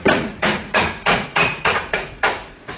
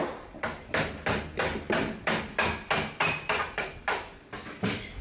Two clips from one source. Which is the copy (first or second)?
first